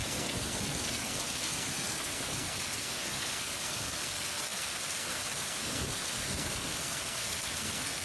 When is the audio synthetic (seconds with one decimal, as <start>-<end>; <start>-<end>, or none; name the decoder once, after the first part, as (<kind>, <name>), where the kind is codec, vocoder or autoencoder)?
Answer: 0.0-8.0 (codec, SNAC)